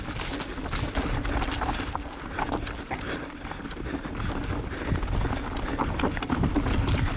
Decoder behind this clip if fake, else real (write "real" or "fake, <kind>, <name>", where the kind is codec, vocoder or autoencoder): real